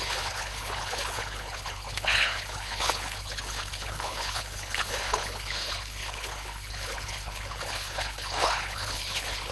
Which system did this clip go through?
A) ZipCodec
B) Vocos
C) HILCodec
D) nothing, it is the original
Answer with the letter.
C